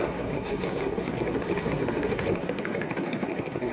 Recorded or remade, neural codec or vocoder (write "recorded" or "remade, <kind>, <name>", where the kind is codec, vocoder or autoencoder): remade, codec, SNAC